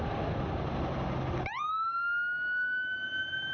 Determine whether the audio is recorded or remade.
recorded